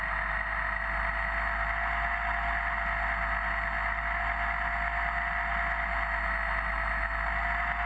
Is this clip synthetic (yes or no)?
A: no